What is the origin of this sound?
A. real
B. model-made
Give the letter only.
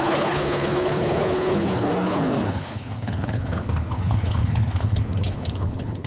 B